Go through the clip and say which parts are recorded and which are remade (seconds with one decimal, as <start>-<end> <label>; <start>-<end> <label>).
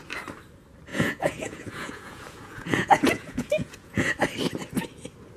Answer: 0.0-0.9 recorded; 0.9-4.1 remade; 4.1-5.4 recorded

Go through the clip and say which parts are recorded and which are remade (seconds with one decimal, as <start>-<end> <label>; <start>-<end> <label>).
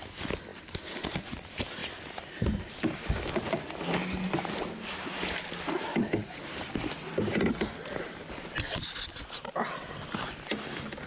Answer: 0.0-11.1 recorded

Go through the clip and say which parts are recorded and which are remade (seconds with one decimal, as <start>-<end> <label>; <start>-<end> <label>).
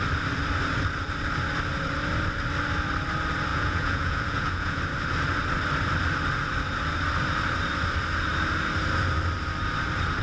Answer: 0.0-3.5 recorded; 3.5-4.8 remade; 4.8-10.2 recorded